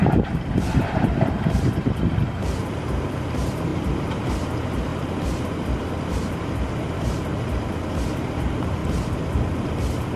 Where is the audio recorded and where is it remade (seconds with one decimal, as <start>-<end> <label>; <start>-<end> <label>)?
0.0-4.9 remade; 4.9-6.1 recorded; 6.1-7.3 remade; 7.3-8.1 recorded; 8.1-8.8 remade; 8.8-9.3 recorded; 9.3-10.2 remade